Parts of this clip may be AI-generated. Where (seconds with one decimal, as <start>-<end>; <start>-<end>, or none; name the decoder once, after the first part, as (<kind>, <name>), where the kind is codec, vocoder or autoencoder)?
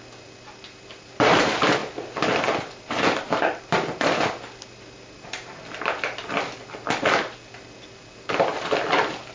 none